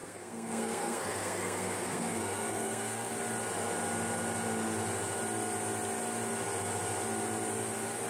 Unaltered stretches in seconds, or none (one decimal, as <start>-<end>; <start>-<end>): 3.1-8.1